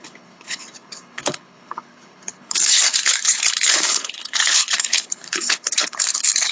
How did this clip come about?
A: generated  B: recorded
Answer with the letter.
A